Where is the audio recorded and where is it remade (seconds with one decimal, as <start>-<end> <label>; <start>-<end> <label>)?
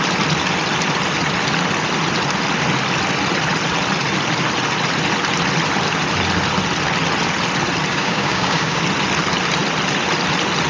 0.0-7.9 recorded; 7.9-8.8 remade; 8.8-10.7 recorded